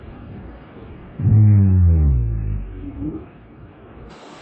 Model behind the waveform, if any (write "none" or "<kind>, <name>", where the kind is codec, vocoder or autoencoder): codec, DAC